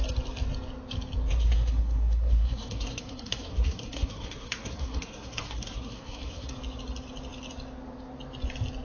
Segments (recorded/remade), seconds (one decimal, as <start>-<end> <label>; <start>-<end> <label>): 0.0-1.3 recorded; 1.3-6.5 remade; 6.5-8.8 recorded